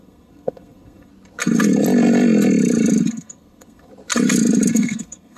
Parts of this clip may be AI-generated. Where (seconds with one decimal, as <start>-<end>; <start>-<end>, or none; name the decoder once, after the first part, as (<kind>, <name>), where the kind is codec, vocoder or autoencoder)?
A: 0.0-1.1 (codec, SNAC); 3.1-3.9; 4.7-5.4